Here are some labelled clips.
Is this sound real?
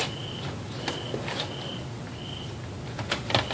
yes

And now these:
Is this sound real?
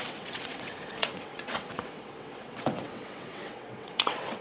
no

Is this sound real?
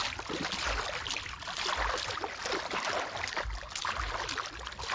yes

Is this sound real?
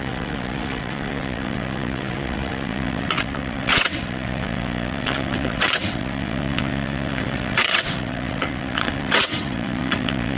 no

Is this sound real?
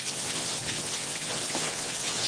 no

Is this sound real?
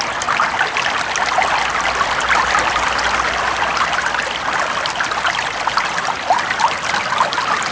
yes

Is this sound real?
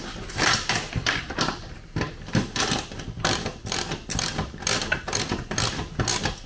yes